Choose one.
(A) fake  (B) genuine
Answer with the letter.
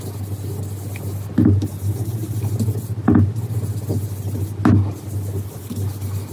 B